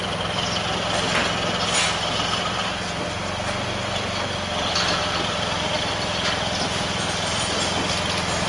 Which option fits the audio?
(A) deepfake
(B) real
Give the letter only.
B